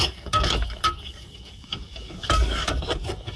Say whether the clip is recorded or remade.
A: remade